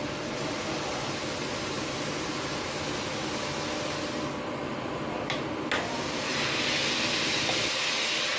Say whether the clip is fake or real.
real